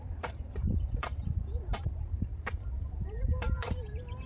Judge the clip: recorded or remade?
remade